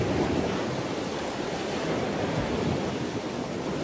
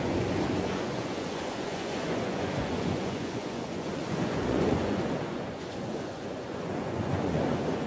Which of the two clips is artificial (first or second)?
second